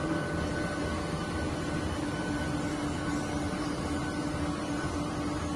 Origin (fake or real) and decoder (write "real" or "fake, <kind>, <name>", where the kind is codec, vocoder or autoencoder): real